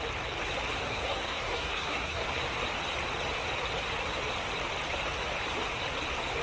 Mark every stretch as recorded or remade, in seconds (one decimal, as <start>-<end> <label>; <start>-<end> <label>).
0.0-0.8 recorded; 0.8-2.2 remade; 2.2-6.4 recorded